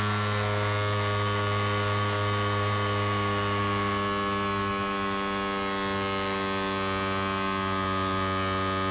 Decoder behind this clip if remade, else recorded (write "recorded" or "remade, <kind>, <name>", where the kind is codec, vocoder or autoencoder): recorded